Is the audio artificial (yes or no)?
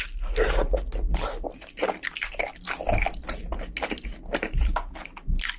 no